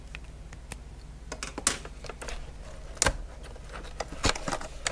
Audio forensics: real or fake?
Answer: real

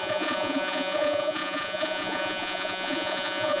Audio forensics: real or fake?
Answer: fake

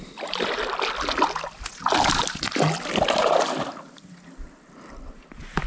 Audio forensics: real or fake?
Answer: real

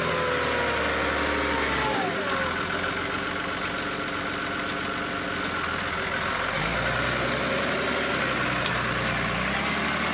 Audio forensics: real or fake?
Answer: real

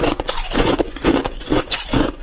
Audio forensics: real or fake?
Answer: fake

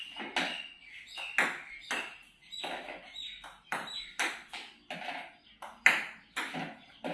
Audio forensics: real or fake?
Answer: real